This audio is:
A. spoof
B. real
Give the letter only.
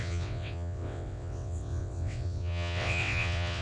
A